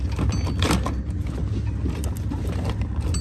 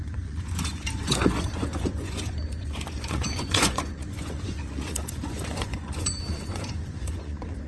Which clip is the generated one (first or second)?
second